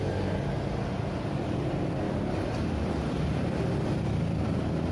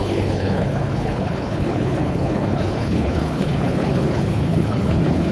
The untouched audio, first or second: first